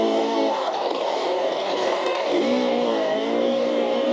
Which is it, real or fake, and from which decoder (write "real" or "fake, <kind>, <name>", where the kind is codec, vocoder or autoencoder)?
fake, codec, DAC